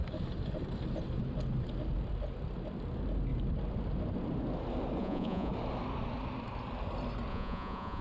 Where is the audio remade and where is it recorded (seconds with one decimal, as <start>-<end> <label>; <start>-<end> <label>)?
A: 0.0-5.0 recorded; 5.0-5.5 remade; 5.5-7.3 recorded; 7.3-8.0 remade